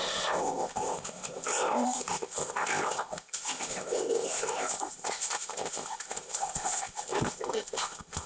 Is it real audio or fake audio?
fake